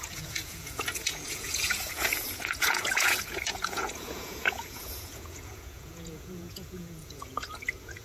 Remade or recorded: remade